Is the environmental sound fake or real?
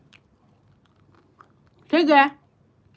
real